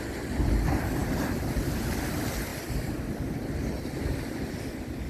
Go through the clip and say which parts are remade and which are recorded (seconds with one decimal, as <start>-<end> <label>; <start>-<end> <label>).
0.0-5.1 recorded